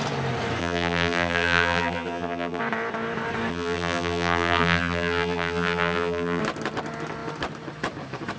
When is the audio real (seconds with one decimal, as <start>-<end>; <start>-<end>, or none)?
0.0-0.6; 2.6-3.5; 6.4-8.4